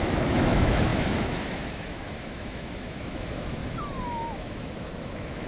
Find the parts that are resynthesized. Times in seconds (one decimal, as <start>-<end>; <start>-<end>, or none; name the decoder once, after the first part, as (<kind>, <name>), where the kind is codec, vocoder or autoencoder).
0.0-3.6 (autoencoder, DAC-VAE); 4.1-5.5